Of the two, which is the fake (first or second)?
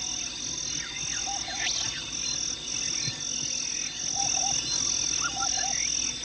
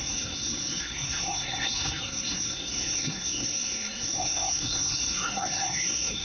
second